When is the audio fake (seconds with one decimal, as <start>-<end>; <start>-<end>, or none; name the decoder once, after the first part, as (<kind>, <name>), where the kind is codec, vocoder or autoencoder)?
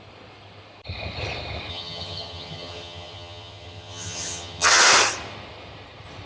1.7-4.8 (vocoder, HiFi-GAN)